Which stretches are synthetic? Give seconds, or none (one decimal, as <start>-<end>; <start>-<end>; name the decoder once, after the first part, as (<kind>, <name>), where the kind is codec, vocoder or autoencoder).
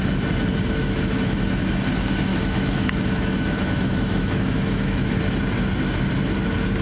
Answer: 0.8-1.8 (autoencoder, DAC-VAE); 2.3-5.2